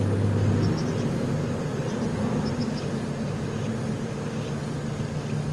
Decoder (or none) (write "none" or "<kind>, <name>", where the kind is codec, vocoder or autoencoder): none